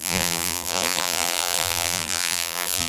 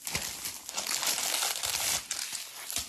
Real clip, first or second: second